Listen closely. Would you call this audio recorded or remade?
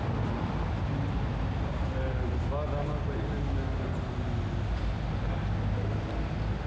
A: recorded